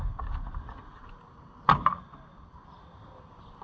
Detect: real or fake real